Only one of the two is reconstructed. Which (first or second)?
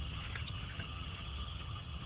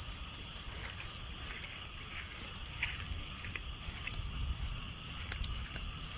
first